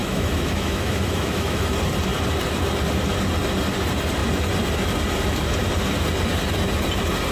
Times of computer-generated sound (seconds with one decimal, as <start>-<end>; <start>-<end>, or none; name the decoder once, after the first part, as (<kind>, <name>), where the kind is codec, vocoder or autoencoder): 0.0-1.6 (autoencoder, DAC-VAE)